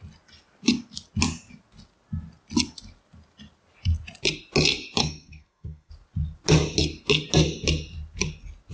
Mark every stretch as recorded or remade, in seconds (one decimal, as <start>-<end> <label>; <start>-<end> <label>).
0.0-5.0 recorded; 5.0-5.9 remade; 5.9-8.7 recorded